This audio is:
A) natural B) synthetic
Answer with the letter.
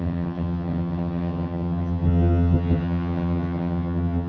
B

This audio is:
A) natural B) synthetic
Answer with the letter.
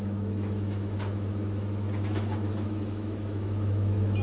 B